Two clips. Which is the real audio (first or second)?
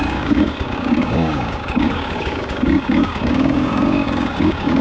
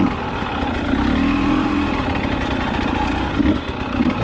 second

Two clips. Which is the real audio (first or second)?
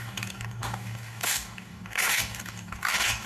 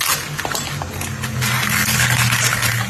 second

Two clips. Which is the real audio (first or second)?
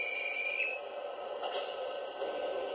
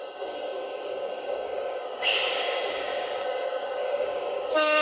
first